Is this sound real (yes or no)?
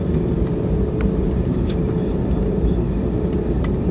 no